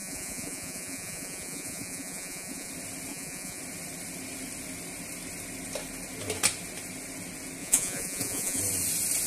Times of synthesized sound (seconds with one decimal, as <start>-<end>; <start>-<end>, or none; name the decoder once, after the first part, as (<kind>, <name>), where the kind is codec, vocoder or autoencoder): 0.0-2.7 (vocoder, Vocos); 3.1-3.6; 7.6-8.6